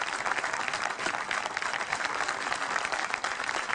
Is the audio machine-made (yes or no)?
no